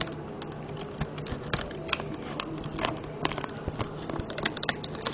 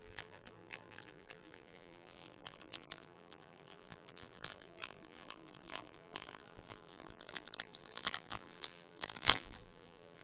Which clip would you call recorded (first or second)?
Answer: first